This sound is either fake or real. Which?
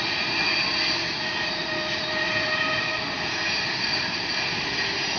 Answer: real